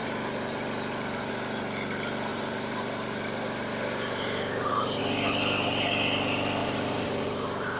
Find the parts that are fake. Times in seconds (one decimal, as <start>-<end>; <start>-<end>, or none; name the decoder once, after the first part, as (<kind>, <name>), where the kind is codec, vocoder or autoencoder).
0.0-1.3 (vocoder, BigVGAN v2); 2.3-5.0; 6.6-7.8